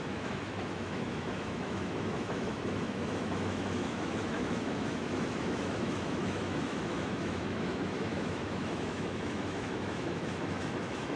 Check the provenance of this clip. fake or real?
fake